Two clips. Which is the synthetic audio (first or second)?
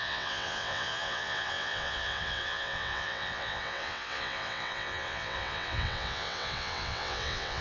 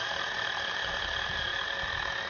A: first